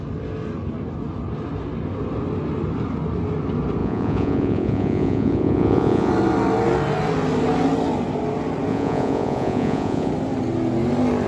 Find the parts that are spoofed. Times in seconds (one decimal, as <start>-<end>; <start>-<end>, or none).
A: 3.8-6.1; 8.7-10.1